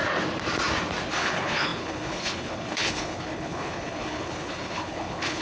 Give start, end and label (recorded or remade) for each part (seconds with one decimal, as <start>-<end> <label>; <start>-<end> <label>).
0.0-1.1 recorded; 1.1-5.4 remade